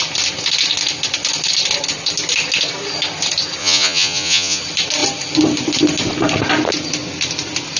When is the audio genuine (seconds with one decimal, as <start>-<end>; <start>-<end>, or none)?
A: 0.0-3.6; 4.6-7.8